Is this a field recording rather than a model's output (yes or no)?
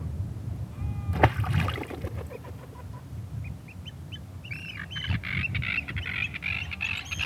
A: yes